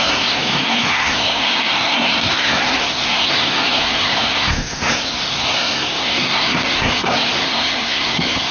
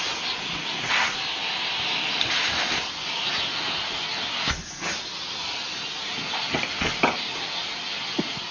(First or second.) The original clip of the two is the second